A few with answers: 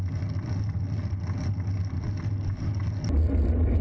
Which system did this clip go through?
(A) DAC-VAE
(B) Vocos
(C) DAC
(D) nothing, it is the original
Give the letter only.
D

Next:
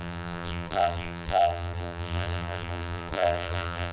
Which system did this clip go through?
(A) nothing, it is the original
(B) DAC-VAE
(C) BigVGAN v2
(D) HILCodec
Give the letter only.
C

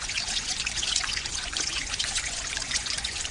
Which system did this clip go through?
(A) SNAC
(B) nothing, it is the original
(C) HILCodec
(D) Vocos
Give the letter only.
D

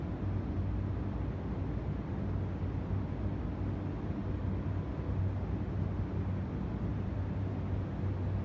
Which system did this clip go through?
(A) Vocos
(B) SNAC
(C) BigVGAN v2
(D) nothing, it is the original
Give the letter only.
D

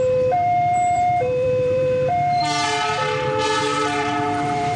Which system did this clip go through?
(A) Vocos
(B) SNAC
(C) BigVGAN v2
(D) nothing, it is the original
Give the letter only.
C